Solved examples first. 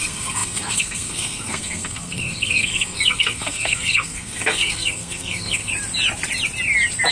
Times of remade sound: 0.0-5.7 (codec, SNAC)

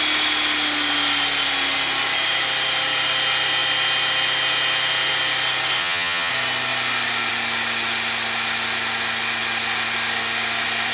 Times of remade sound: 5.8-6.3 (vocoder, HiFi-GAN)

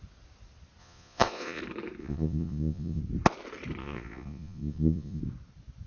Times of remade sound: 0.8-1.6 (vocoder, Vocos); 2.0-3.0; 3.8-5.2

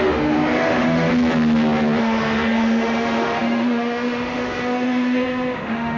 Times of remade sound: 0.0-1.1 (autoencoder, DAC-VAE); 2.0-6.0